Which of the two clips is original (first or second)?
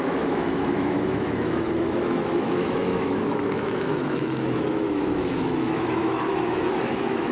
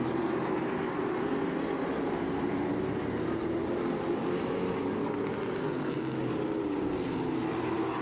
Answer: second